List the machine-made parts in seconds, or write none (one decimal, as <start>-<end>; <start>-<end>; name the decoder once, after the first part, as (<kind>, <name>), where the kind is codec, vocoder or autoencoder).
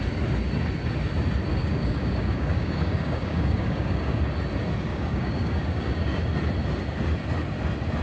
1.5-4.2 (codec, DAC); 4.9-6.2